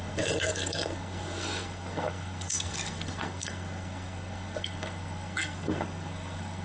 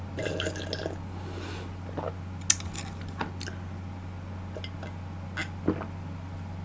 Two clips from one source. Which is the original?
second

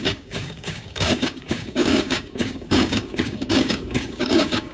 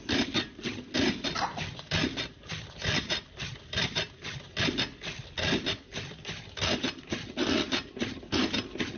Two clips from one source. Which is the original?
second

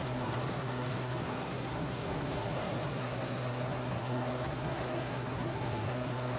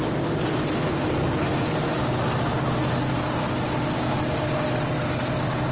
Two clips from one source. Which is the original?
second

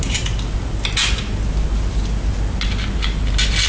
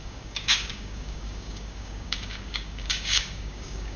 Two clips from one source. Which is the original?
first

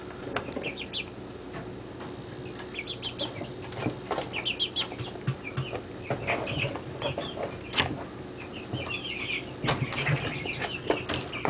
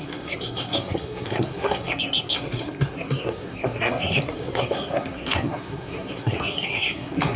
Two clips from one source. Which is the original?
first